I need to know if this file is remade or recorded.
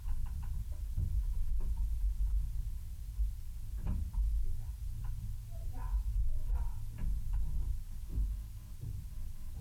recorded